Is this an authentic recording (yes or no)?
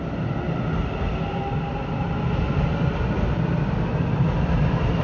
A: yes